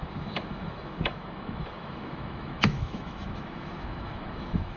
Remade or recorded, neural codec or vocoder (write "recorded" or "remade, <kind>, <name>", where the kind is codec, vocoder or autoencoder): remade, autoencoder, DAC-VAE